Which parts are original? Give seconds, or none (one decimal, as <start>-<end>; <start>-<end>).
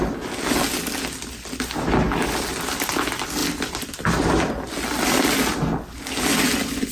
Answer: 0.0-6.9